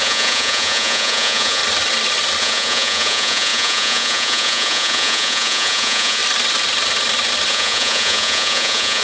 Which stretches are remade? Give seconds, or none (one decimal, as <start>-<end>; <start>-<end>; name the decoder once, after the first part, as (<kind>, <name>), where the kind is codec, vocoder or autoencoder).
0.0-1.6 (vocoder, Vocos); 2.4-6.2; 7.5-9.0